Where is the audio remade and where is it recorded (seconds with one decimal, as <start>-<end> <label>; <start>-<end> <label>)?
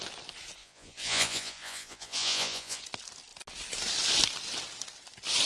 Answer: 0.0-0.6 recorded; 0.6-2.8 remade; 2.8-5.5 recorded